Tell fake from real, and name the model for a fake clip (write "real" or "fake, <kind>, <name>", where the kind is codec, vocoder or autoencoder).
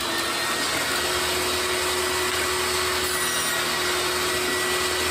real